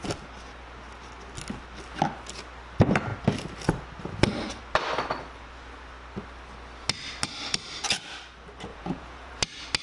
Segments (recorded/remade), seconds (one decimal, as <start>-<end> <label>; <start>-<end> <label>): 0.0-8.7 recorded; 8.7-9.3 remade; 9.3-9.8 recorded